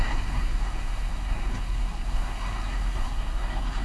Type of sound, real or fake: fake